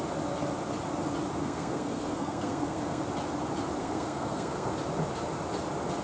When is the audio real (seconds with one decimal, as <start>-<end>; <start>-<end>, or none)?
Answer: 0.0-1.4; 3.0-3.8; 4.7-6.0